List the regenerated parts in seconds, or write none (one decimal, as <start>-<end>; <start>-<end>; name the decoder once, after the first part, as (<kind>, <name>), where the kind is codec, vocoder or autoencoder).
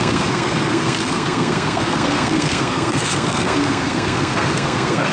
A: 0.0-5.1 (codec, SNAC)